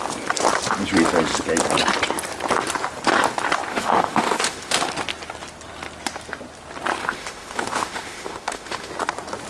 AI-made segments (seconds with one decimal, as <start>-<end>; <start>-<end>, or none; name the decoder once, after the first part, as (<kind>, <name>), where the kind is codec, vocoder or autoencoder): 3.7-4.9 (autoencoder, DAC-VAE); 7.0-8.9

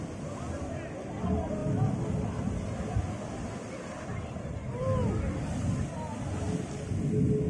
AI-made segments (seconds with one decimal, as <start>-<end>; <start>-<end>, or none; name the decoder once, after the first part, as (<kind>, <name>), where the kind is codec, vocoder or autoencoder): none

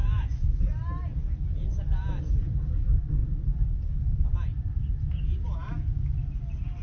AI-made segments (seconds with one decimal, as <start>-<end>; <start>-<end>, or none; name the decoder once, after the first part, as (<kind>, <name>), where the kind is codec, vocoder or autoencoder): 0.0-0.6 (autoencoder, DAC-VAE)